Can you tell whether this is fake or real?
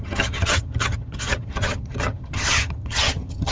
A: fake